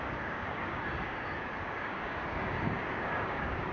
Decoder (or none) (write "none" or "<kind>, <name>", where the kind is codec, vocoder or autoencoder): codec, DAC